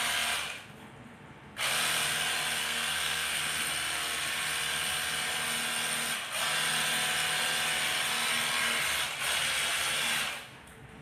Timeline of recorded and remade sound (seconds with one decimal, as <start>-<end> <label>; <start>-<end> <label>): 0.0-2.6 recorded; 2.6-3.4 remade; 3.4-11.0 recorded